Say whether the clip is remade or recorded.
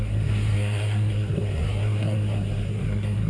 remade